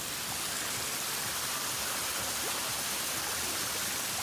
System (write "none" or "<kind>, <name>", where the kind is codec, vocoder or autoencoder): none